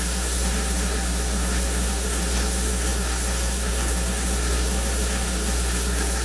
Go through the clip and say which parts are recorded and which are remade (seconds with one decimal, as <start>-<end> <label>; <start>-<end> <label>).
0.0-6.2 remade